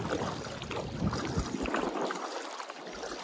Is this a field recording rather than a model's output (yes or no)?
yes